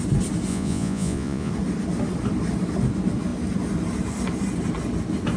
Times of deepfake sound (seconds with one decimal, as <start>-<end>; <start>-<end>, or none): 0.5-1.5